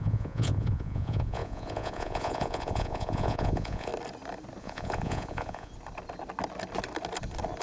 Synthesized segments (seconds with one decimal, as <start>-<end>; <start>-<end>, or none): 0.0-3.9; 4.6-5.7